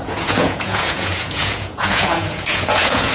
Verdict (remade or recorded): remade